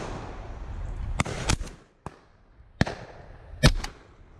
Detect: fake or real real